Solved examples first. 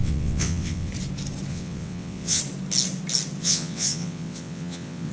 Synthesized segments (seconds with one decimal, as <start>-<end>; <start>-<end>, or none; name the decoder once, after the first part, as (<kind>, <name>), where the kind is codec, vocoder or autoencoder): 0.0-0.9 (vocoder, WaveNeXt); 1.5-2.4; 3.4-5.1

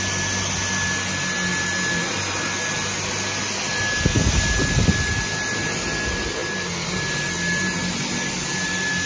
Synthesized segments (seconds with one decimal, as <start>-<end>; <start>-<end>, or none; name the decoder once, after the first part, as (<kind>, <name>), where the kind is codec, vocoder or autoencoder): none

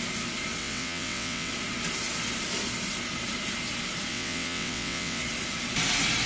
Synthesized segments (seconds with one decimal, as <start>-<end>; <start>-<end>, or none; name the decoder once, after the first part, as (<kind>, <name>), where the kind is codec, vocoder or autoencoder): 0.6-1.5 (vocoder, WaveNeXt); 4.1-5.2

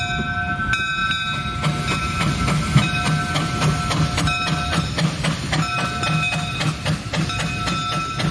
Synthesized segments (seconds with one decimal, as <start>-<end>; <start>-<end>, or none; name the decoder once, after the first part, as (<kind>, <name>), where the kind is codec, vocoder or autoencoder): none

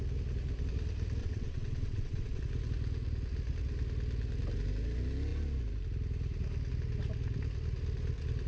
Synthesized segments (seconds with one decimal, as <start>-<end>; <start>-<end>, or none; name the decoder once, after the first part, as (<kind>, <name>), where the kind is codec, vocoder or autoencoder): 1.2-2.4 (vocoder, WaveNeXt)

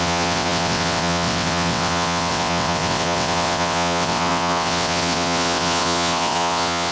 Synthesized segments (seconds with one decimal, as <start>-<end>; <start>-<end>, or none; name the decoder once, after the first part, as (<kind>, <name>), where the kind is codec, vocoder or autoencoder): 0.0-6.9 (vocoder, WaveNeXt)

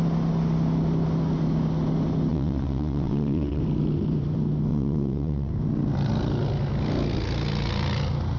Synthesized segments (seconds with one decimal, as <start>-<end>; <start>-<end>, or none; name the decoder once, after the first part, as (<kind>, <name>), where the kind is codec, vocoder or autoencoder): 2.3-3.6 (vocoder, WaveNeXt); 4.7-5.5

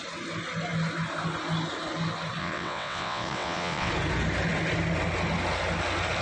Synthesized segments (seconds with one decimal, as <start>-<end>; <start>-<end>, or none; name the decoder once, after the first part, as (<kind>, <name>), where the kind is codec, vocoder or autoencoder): 2.4-3.9 (vocoder, WaveNeXt)